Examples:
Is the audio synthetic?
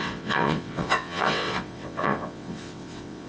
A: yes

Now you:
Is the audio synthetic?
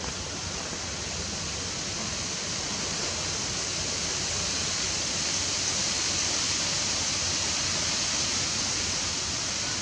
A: no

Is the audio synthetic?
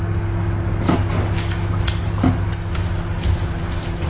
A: no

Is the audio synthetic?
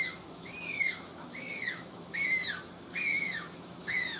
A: yes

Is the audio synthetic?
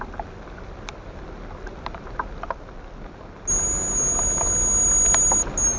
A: no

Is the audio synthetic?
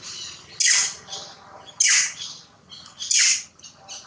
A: no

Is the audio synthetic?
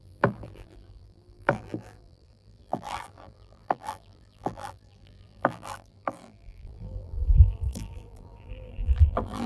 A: yes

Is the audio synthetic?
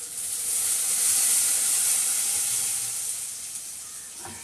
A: no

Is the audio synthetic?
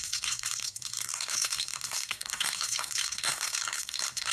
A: yes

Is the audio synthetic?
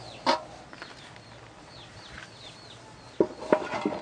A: no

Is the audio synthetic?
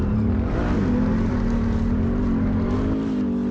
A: no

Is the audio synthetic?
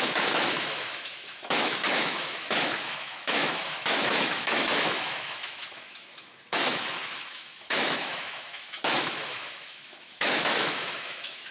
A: yes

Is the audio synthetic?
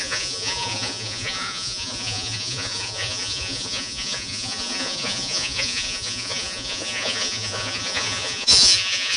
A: yes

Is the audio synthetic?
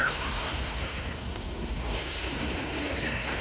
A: yes